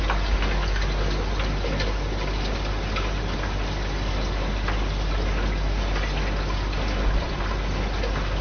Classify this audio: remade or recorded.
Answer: recorded